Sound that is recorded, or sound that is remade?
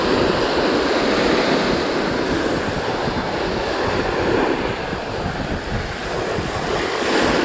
recorded